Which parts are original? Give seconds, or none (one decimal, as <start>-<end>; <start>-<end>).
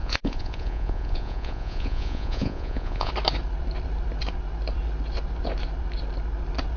3.1-6.8